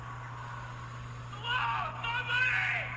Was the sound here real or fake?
real